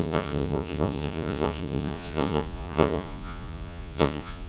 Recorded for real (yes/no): no